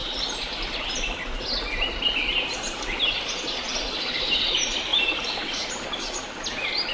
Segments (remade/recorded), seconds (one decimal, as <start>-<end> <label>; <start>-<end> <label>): 0.0-3.6 recorded; 3.6-6.9 remade

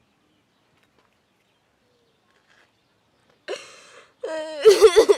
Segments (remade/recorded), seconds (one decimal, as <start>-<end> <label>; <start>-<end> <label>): 0.0-5.2 recorded

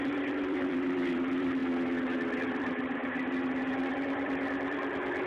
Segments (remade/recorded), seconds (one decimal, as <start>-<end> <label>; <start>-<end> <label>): 0.0-1.6 remade; 1.6-2.4 recorded; 2.4-3.0 remade; 3.0-3.9 recorded; 3.9-5.3 remade

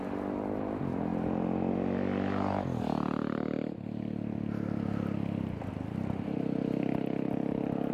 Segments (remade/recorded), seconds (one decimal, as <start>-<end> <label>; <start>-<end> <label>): 0.0-7.9 recorded

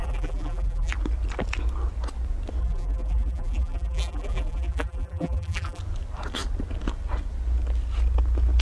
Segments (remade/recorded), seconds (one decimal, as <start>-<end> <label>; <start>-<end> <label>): 0.0-0.9 remade; 0.9-2.6 recorded; 2.6-5.8 remade; 5.8-8.6 recorded

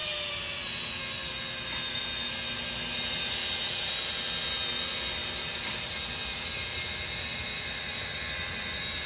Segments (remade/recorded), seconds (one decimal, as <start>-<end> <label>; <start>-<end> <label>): 0.0-5.2 recorded; 5.2-8.0 remade; 8.0-9.1 recorded

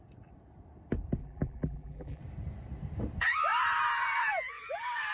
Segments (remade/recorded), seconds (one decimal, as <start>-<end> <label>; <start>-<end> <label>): 0.0-1.2 recorded; 1.2-2.2 remade; 2.2-5.1 recorded